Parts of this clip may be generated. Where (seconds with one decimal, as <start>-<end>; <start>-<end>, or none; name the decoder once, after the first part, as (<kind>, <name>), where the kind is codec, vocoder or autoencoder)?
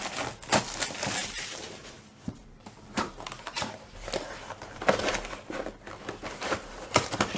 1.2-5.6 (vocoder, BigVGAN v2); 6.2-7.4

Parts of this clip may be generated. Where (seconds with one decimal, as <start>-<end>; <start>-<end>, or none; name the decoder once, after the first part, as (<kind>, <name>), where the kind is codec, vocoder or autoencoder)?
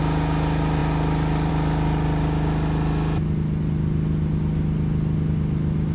none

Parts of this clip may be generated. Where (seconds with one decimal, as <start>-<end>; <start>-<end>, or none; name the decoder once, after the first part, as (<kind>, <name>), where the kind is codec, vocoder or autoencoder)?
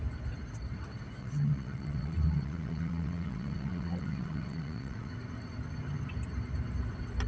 1.2-5.1 (vocoder, WaveNeXt)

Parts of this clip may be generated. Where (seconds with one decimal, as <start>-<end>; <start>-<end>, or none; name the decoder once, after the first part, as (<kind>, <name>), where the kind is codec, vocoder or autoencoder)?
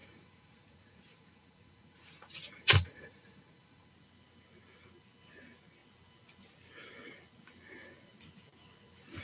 0.0-3.9 (vocoder, Vocos)